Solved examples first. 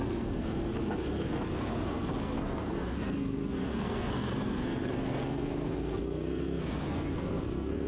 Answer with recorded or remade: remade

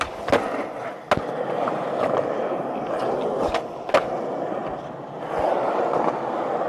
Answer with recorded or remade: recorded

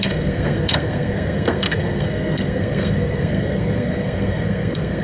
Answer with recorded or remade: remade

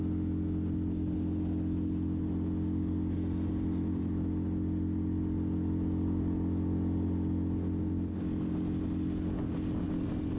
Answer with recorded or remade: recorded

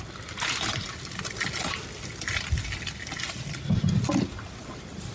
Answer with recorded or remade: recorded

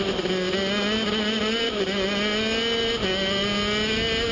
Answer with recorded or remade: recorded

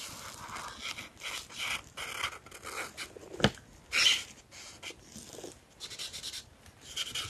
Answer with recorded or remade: recorded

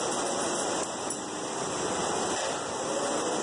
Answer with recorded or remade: recorded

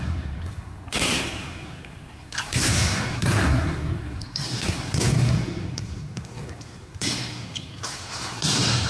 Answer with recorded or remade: remade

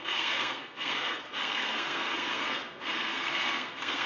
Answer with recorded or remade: remade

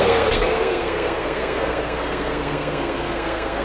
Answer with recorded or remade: remade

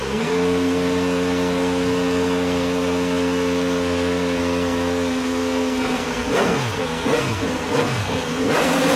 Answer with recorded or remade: remade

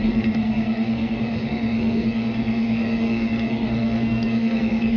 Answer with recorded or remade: remade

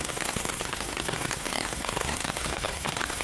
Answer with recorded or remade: remade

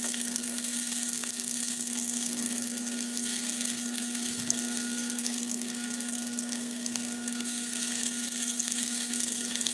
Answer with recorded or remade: remade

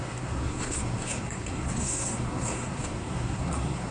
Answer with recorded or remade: remade